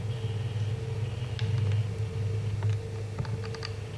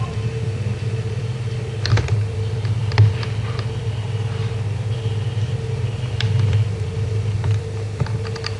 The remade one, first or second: second